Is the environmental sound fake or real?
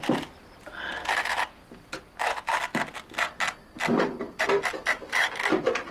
real